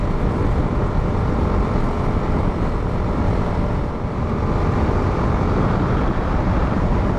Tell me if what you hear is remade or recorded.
recorded